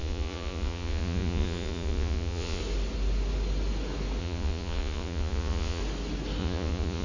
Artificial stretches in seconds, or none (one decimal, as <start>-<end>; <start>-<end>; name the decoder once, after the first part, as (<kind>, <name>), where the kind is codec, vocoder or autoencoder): 0.0-2.6 (vocoder, Vocos); 4.2-5.8; 6.4-7.0